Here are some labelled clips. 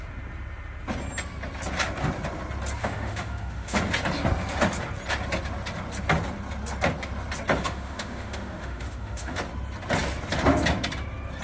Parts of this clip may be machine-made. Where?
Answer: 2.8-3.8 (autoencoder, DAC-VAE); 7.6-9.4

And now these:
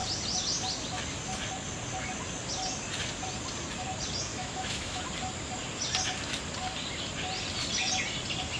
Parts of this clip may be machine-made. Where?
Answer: 4.3-5.0 (autoencoder, DAC-VAE)